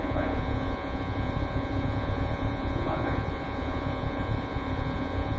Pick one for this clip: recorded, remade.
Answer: remade